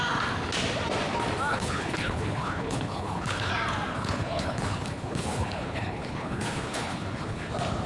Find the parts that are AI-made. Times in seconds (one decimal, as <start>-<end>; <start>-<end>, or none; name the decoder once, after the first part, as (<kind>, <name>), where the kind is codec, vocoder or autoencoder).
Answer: 1.5-3.5 (codec, HILCodec); 3.9-7.5